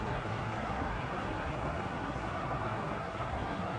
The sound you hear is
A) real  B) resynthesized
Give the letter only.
B